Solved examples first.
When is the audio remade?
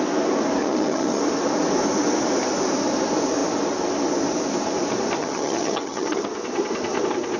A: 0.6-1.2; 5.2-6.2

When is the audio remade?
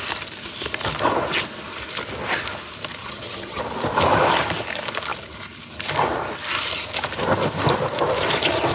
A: 3.0-3.6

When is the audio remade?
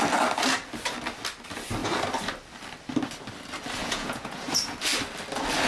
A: 3.8-4.4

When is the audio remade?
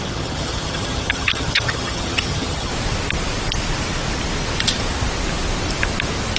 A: 0.0-2.7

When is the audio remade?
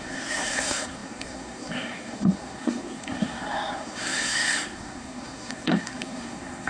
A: 0.0-6.7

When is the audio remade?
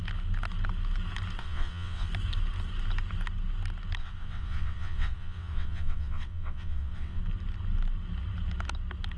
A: 1.4-2.1; 4.0-7.2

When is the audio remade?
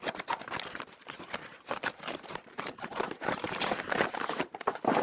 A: 1.5-4.5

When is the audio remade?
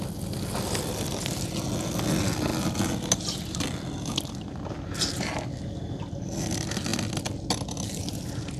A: none